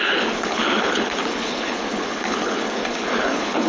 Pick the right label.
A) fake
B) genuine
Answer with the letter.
A